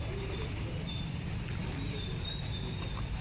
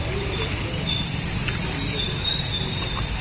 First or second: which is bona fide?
second